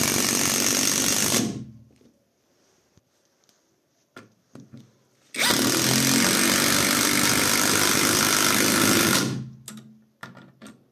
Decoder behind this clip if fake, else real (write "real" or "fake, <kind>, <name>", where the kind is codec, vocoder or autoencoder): real